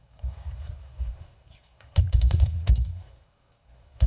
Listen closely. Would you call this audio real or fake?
fake